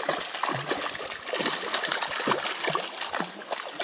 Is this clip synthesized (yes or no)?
no